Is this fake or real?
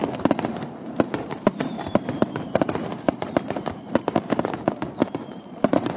fake